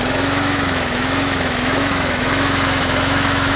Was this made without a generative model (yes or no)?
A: no